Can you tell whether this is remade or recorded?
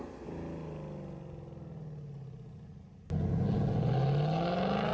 recorded